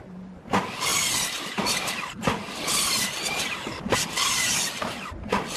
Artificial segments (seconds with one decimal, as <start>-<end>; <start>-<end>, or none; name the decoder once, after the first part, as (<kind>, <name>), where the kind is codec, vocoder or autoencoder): 0.9-4.3 (vocoder, BigVGAN v2)